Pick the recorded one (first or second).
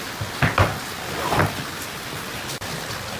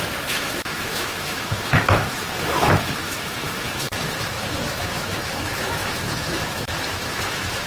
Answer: first